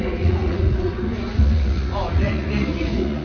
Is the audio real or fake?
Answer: fake